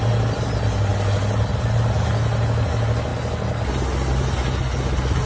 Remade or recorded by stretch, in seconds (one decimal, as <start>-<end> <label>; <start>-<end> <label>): 0.0-5.3 recorded